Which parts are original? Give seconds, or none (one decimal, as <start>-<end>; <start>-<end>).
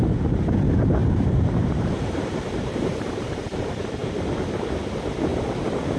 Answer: 0.0-1.0; 3.6-6.0